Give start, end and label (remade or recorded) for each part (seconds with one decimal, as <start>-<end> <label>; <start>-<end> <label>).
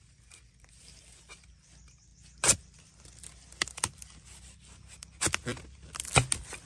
0.0-6.7 recorded